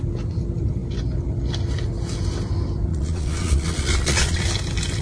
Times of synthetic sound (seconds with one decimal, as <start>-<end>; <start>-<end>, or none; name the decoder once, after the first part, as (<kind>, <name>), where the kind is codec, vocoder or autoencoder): 2.9-4.4 (vocoder, Vocos)